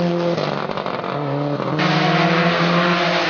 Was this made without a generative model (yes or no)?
yes